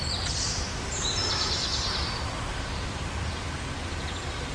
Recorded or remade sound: recorded